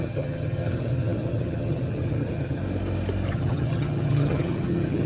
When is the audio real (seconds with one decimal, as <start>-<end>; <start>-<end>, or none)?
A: 2.6-3.3